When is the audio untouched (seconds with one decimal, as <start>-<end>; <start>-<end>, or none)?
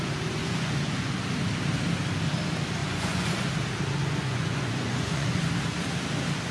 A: 0.0-0.4; 1.1-2.8; 3.5-4.0; 5.5-6.5